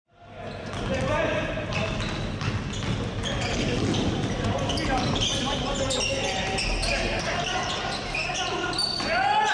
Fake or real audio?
real